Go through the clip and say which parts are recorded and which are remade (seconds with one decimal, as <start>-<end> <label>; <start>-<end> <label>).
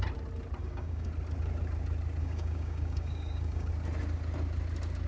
0.0-0.6 recorded; 0.6-1.1 remade; 1.1-2.2 recorded; 2.2-3.7 remade; 3.7-5.1 recorded